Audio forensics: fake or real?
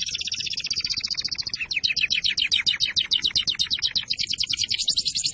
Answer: real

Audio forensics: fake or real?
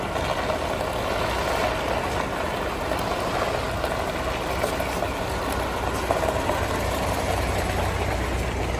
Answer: real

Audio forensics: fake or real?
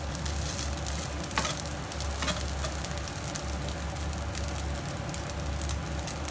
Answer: real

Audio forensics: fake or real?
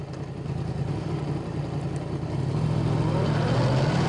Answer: real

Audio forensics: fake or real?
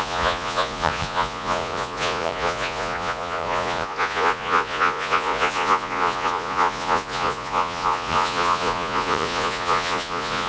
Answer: fake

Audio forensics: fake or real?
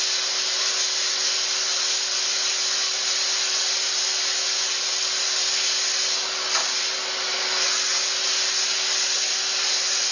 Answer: real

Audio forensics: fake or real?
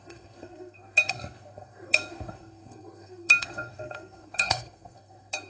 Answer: fake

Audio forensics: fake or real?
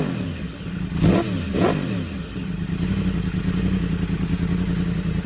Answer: real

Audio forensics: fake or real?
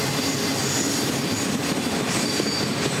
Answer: real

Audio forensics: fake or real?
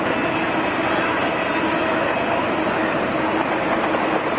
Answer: real